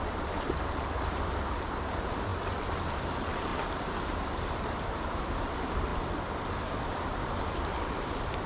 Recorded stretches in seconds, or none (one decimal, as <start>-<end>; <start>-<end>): 3.5-4.9; 5.9-6.4